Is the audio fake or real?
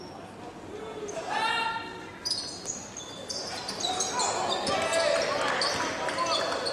real